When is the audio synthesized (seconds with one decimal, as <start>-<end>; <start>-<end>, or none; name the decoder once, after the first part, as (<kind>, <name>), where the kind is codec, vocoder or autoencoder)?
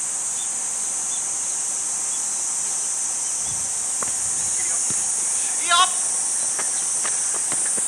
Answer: none